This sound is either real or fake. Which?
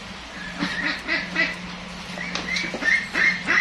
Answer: real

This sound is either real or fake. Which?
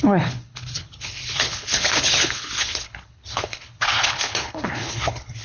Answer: fake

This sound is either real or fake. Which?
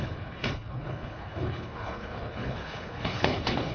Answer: fake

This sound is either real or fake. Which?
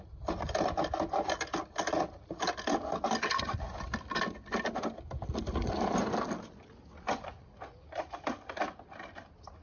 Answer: real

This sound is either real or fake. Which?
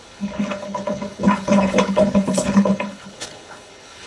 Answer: fake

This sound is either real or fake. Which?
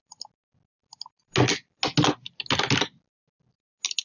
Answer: real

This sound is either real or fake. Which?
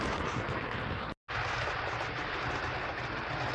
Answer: real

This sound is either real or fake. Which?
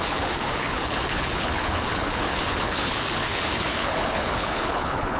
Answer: fake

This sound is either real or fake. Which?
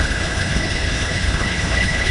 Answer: fake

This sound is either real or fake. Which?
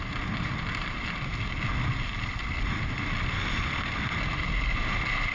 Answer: real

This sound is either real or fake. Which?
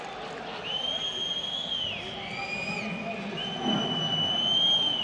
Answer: real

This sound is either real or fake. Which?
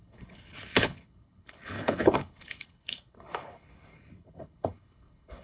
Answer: fake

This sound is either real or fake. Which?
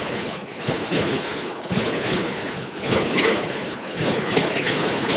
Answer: fake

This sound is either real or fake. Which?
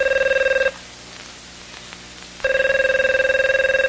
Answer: real